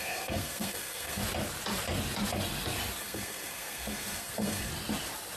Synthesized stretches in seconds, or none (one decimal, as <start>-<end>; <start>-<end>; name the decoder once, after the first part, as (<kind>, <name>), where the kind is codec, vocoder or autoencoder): 0.0-1.2 (codec, SNAC); 3.0-4.7